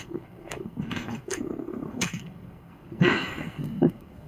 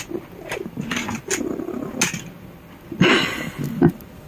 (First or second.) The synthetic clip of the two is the first